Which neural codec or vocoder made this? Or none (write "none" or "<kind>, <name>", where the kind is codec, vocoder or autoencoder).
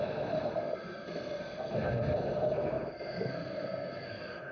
codec, SNAC